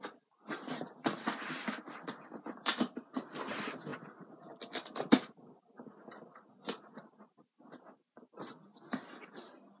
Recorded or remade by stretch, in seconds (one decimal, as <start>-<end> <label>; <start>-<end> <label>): 0.0-9.8 remade